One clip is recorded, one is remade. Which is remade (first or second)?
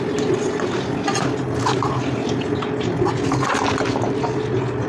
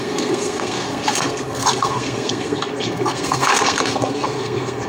second